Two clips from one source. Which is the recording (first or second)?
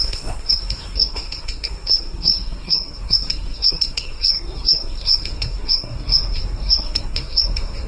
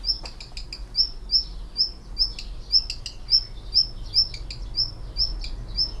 second